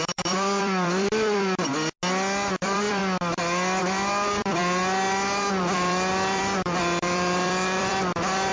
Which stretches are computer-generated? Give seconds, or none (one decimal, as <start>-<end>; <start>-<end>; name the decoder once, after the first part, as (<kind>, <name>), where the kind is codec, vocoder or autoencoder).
0.0-1.7 (vocoder, BigVGAN v2); 2.6-3.0; 3.8-4.6; 5.6-8.5

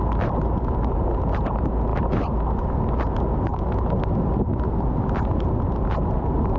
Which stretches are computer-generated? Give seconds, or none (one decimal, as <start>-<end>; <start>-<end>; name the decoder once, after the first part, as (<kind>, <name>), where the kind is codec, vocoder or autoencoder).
none

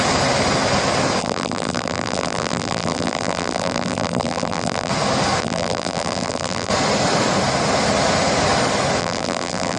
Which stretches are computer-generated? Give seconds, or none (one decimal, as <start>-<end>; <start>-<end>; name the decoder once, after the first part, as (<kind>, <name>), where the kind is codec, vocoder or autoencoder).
1.2-4.9 (vocoder, BigVGAN v2); 5.4-6.7; 9.0-9.8

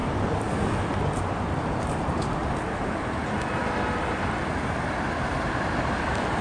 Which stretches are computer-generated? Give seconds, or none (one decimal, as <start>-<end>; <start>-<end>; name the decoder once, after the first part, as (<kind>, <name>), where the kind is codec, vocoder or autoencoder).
0.0-2.4 (vocoder, BigVGAN v2); 5.5-6.4

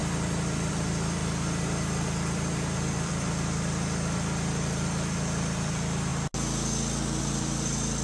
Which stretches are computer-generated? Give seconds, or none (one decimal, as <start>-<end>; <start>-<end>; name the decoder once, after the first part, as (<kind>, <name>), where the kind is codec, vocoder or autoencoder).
0.0-6.1 (vocoder, BigVGAN v2); 7.2-8.0

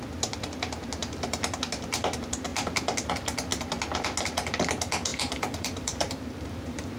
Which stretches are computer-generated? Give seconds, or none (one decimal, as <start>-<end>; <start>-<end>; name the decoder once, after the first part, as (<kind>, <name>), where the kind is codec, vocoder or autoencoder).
1.0-1.6 (vocoder, BigVGAN v2); 5.1-7.0

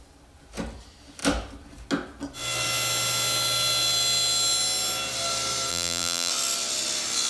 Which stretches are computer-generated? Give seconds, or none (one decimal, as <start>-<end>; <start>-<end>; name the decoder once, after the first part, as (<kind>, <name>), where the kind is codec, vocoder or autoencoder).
5.7-6.3 (vocoder, BigVGAN v2)

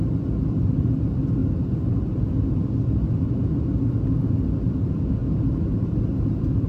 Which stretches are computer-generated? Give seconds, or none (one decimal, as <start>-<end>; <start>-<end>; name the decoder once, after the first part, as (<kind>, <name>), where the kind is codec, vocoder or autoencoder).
0.0-1.4 (vocoder, BigVGAN v2); 2.2-5.2; 5.8-6.7